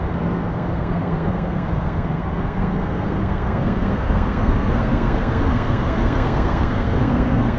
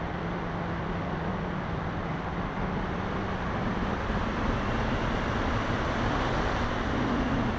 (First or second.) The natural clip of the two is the second